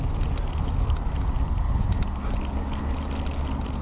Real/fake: real